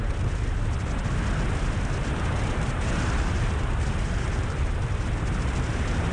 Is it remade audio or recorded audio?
remade